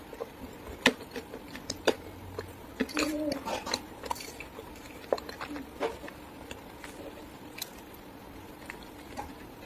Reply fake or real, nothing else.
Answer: real